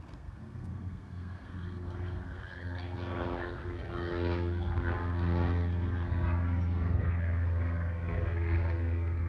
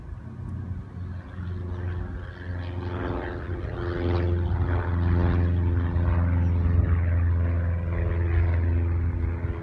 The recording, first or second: second